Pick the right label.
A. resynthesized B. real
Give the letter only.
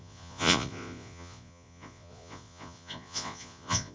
A